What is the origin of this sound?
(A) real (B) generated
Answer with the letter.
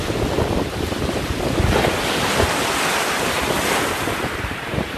A